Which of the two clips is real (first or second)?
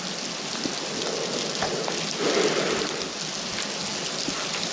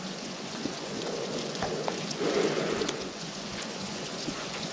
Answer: first